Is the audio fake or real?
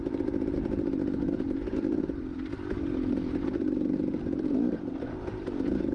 fake